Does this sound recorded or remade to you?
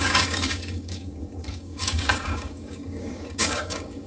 remade